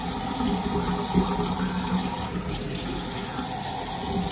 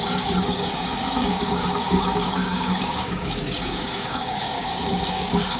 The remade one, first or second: second